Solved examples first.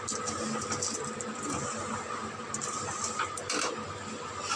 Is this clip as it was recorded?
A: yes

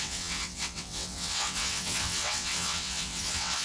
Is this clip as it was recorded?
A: no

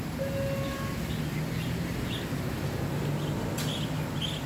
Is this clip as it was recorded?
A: yes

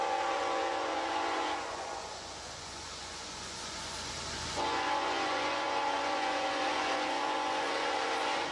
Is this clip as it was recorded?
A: no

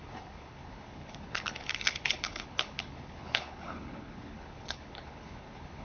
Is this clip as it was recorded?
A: no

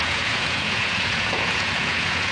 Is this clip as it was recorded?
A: no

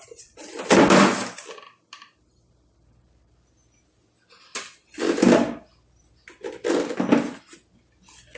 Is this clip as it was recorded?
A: yes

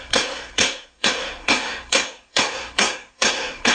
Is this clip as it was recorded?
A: no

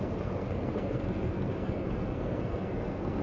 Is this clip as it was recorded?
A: no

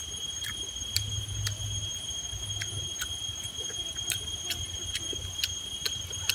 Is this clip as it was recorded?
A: yes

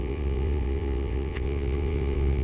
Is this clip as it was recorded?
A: no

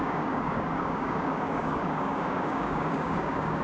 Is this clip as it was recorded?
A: no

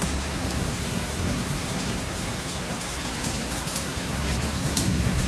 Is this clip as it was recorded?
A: no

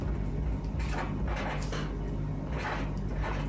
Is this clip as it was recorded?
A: yes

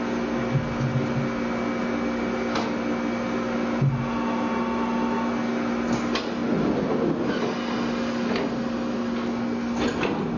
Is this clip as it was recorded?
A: yes